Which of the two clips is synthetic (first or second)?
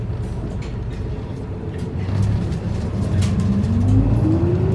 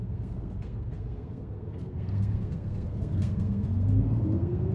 second